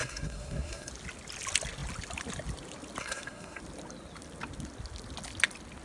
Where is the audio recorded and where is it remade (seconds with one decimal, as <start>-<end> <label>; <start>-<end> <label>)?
0.0-0.9 remade; 0.9-3.0 recorded; 3.0-3.6 remade; 3.6-5.8 recorded